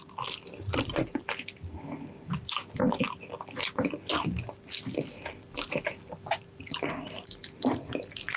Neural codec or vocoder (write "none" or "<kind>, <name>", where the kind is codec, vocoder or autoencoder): none